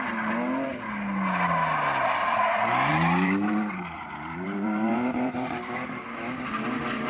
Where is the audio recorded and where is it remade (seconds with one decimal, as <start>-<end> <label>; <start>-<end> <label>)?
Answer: 0.0-2.9 recorded; 2.9-6.0 remade; 6.0-7.1 recorded